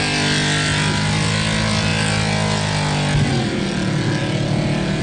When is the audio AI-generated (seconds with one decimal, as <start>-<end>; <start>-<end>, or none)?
none